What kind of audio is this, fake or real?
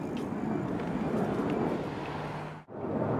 real